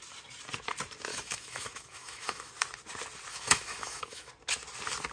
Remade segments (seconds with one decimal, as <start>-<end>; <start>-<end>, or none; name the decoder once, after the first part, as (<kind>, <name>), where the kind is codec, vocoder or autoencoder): 1.1-2.5 (autoencoder, DAC-VAE); 3.3-4.3